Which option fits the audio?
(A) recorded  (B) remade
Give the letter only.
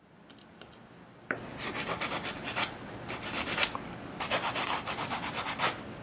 A